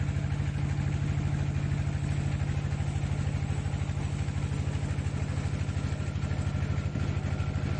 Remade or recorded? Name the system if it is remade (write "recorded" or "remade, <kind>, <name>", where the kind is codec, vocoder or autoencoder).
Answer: recorded